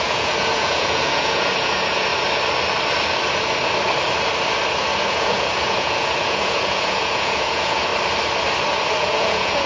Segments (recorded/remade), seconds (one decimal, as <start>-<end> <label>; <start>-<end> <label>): 0.0-2.1 remade; 2.1-5.1 recorded; 5.1-7.9 remade; 7.9-8.9 recorded; 8.9-9.7 remade